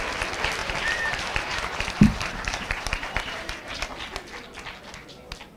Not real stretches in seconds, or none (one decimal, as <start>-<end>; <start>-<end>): 0.6-3.8